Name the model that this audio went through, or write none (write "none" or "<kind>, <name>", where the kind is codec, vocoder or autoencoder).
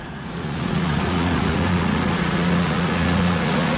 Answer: vocoder, Vocos